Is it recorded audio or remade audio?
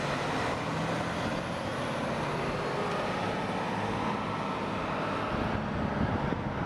recorded